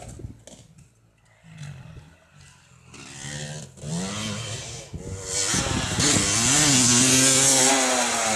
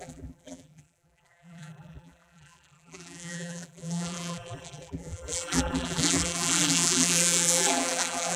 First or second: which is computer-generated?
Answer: second